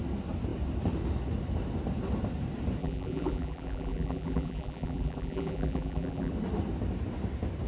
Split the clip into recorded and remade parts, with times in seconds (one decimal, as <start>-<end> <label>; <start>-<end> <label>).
0.0-2.8 recorded; 2.8-6.3 remade; 6.3-7.7 recorded